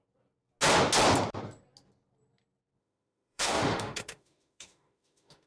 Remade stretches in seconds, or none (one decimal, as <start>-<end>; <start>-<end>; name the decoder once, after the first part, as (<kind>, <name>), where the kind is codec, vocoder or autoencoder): 2.8-5.5 (autoencoder, DAC-VAE)